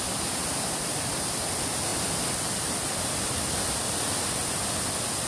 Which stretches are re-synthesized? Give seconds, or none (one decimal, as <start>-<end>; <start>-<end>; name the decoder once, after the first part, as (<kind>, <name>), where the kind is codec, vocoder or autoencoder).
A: 1.9-2.8 (vocoder, BigVGAN v2)